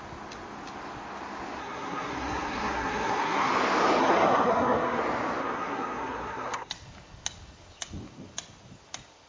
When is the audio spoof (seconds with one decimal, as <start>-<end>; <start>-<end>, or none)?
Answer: 1.6-3.5; 4.0-5.0; 5.4-6.7